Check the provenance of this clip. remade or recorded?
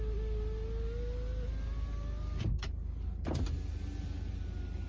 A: recorded